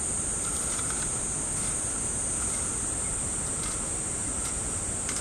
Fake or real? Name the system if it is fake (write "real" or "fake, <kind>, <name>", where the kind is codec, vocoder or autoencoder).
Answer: real